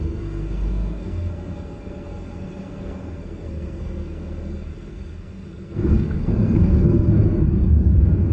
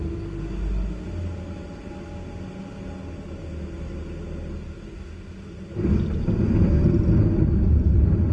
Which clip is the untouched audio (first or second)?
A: second